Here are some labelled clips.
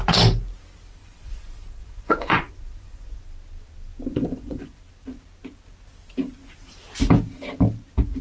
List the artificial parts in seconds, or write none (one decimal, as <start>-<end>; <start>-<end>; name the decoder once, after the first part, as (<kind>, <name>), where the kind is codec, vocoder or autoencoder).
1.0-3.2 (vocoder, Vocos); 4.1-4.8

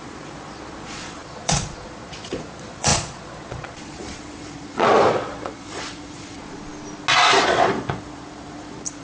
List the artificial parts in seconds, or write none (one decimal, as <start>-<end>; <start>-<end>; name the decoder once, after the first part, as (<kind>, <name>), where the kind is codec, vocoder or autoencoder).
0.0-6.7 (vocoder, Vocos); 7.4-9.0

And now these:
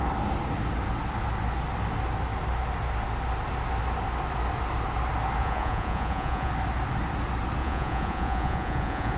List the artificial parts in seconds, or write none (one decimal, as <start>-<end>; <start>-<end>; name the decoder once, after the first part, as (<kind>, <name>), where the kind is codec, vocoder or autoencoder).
5.4-6.5 (vocoder, Vocos); 7.6-9.2

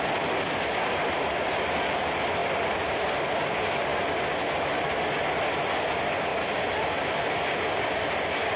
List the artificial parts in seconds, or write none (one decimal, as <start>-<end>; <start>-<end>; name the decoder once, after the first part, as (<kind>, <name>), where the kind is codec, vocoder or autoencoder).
none

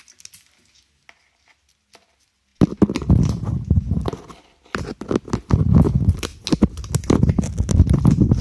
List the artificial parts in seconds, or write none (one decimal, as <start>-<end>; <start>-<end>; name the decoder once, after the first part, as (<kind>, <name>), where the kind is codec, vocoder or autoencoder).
none

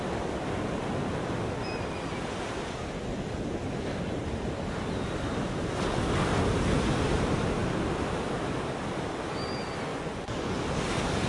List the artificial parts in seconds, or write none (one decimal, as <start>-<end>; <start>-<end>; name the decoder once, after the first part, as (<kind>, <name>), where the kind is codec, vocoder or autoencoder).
9.9-10.6 (vocoder, Vocos)